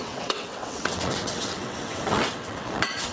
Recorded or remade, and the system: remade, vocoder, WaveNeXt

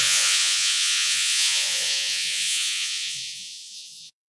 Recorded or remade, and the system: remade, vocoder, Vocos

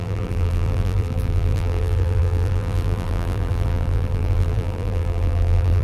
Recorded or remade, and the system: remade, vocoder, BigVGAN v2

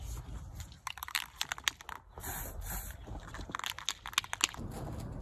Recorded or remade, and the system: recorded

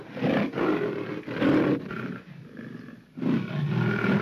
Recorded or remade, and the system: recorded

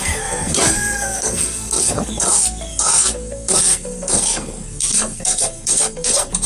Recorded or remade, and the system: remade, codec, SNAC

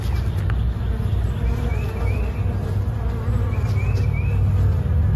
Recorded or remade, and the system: recorded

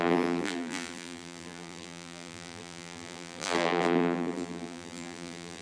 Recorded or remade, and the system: remade, vocoder, BigVGAN v2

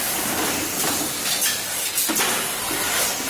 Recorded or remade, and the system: recorded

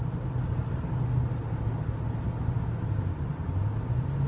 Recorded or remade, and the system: recorded